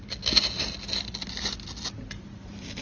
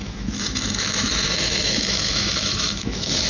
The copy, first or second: second